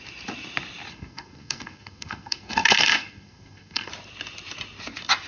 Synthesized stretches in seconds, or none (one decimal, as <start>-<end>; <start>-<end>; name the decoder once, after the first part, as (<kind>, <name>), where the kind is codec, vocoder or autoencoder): 0.9-3.9 (codec, SNAC)